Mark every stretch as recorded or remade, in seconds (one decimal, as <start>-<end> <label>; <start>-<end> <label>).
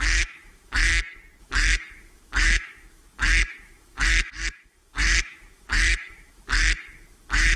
0.0-0.9 remade; 0.9-1.4 recorded; 1.4-7.6 remade